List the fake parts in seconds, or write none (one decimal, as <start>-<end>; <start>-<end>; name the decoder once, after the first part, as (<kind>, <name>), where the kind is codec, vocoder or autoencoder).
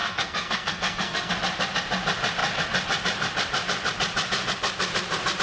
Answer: 0.0-1.3 (codec, SNAC)